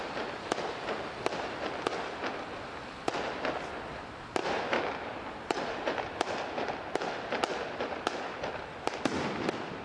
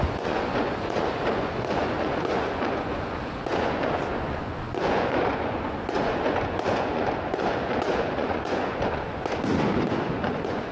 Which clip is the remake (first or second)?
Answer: second